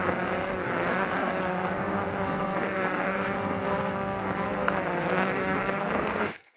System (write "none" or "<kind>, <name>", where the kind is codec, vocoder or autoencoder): codec, SNAC